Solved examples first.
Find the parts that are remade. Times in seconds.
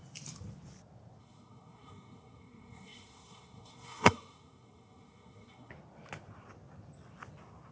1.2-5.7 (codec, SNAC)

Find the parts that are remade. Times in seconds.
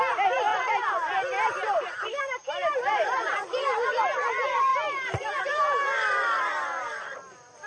0.0-0.5 (vocoder, BigVGAN v2); 1.5-4.7; 5.4-7.7